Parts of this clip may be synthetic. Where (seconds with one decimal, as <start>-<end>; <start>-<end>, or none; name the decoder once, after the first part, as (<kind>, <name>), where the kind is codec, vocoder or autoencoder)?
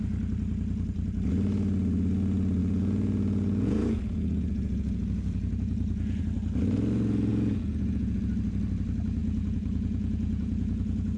2.6-6.2 (vocoder, Vocos); 7.3-8.2; 9.2-11.2